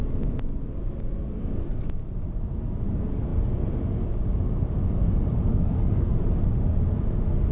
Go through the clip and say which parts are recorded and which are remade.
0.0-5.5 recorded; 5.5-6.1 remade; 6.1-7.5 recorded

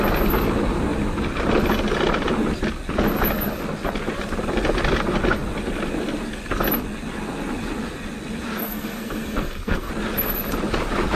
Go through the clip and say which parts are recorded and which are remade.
0.0-8.6 recorded; 8.6-9.9 remade; 9.9-11.2 recorded

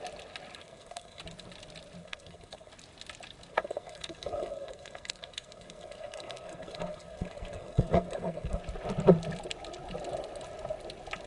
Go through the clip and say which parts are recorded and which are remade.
0.0-0.6 recorded; 0.6-1.2 remade; 1.2-2.0 recorded; 2.0-2.7 remade; 2.7-3.5 recorded; 3.5-8.6 remade; 8.6-11.3 recorded

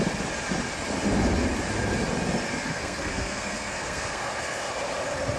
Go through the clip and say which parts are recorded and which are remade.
0.0-2.7 recorded; 2.7-4.7 remade; 4.7-5.4 recorded

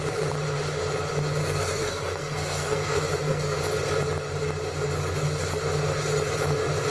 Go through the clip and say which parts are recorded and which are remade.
0.0-1.4 recorded; 1.4-3.6 remade; 3.6-6.9 recorded

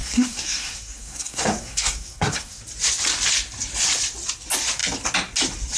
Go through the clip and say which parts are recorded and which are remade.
0.0-2.6 remade; 2.6-5.8 recorded

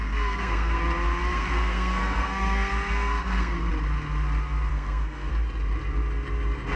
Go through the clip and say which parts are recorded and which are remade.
0.0-0.8 remade; 0.8-1.3 recorded; 1.3-3.7 remade; 3.7-4.7 recorded; 4.7-5.3 remade; 5.3-6.8 recorded

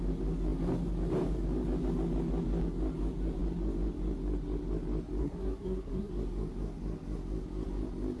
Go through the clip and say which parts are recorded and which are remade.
0.0-5.2 recorded; 5.2-6.1 remade; 6.1-8.2 recorded